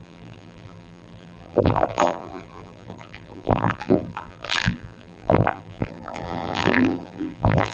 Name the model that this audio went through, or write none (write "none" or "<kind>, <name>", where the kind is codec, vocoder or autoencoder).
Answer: vocoder, BigVGAN v2